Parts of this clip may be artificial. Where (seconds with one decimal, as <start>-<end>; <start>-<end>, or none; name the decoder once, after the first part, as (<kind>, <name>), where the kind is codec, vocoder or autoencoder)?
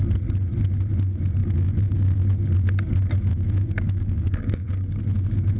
1.4-2.2 (codec, DAC); 3.3-5.0